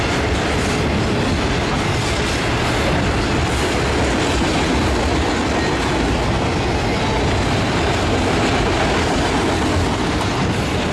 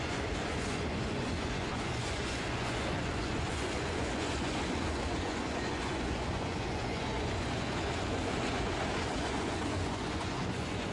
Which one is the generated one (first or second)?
second